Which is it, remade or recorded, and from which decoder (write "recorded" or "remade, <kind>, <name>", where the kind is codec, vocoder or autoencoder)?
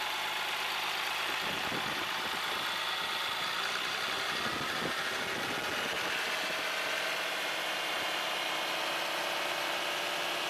recorded